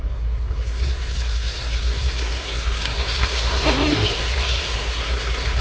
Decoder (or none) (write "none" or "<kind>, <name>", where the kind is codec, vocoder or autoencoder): codec, SNAC